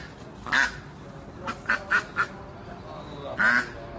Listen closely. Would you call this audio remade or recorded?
recorded